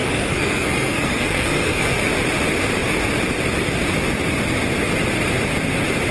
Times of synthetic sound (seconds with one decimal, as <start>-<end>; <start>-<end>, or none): 0.0-2.1